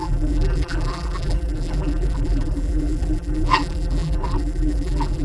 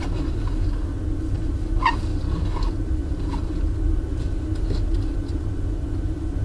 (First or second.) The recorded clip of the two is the second